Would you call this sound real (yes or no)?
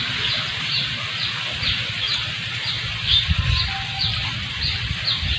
yes